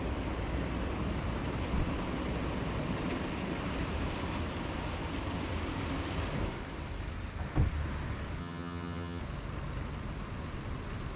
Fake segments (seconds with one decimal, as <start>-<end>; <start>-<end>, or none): 8.4-9.2